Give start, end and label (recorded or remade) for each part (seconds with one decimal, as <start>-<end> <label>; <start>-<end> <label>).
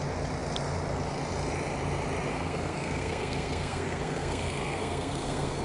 0.0-2.3 recorded; 2.3-5.6 remade